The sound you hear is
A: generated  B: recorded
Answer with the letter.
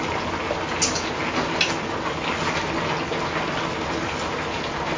B